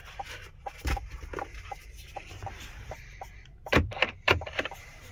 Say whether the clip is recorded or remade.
remade